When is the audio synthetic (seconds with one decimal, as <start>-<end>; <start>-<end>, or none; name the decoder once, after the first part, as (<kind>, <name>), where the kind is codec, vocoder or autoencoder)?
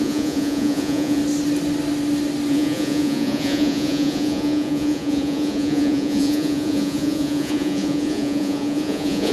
0.0-1.2 (vocoder, Vocos); 2.5-9.3